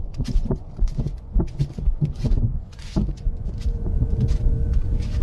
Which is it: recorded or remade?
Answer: remade